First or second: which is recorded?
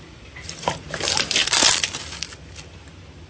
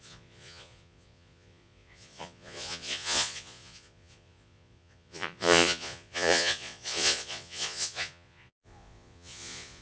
first